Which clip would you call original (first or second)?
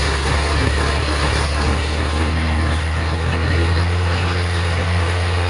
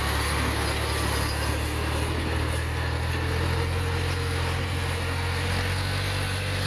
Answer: second